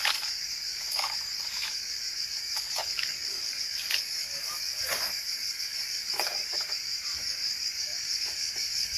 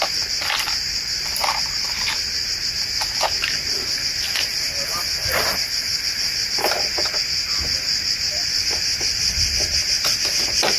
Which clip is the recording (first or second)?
second